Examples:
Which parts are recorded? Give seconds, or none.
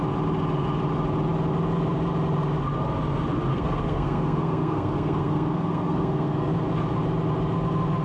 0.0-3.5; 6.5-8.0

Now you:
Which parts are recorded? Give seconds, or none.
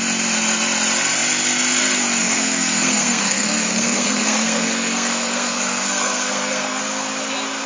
0.0-2.2; 6.8-7.7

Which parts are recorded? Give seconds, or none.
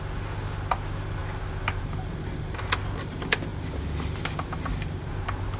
0.0-5.6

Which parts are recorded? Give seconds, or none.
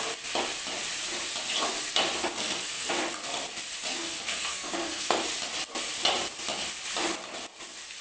0.0-2.4; 2.9-3.9; 5.2-8.0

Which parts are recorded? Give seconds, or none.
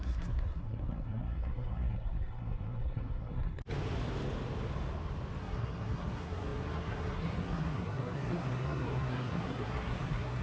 3.6-5.4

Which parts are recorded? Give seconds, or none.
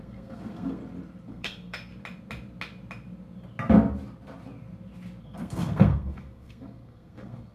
0.8-1.3; 1.9-5.2